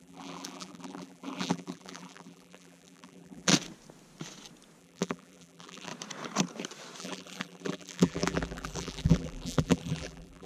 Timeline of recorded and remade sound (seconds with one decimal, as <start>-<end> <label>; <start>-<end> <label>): 0.0-3.5 remade; 3.5-4.8 recorded; 4.8-5.9 remade; 5.9-7.0 recorded; 7.0-10.5 remade